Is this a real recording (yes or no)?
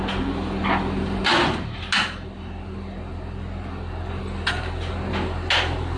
yes